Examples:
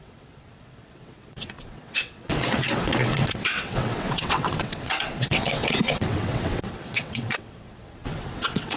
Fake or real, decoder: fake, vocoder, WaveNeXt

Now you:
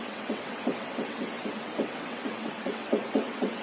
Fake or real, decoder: fake, vocoder, WaveNeXt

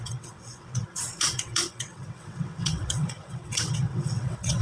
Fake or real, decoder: fake, vocoder, WaveNeXt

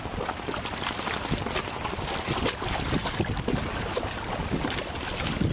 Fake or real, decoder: real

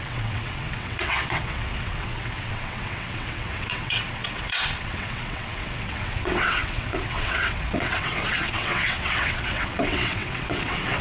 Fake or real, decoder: fake, vocoder, WaveNeXt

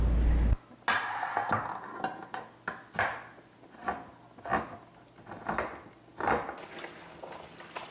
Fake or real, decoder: real